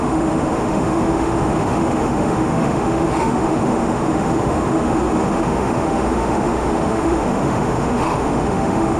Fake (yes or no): yes